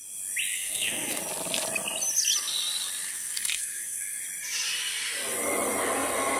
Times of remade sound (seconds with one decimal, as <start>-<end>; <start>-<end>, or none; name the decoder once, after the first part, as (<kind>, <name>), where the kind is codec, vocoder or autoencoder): 0.5-1.2 (codec, SNAC); 3.1-4.2